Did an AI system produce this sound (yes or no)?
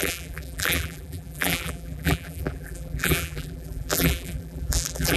yes